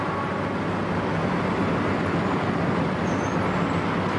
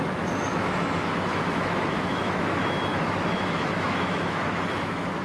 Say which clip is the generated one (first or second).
second